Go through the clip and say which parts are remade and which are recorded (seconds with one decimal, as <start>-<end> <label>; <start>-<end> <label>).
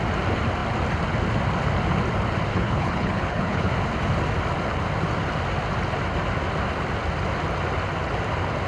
0.0-2.5 recorded; 2.5-3.7 remade; 3.7-8.7 recorded